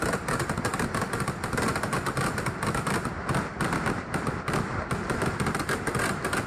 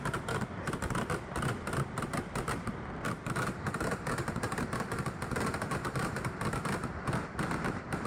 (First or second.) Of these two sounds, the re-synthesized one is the second